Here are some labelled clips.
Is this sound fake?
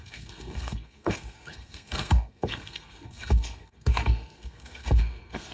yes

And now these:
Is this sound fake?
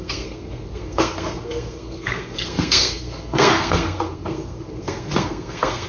yes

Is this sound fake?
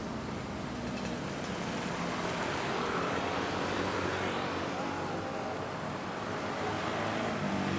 no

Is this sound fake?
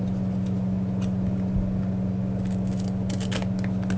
no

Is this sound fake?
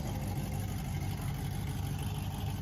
no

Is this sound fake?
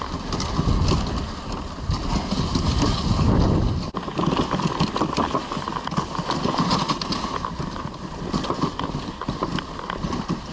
no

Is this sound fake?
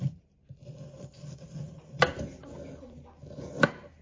no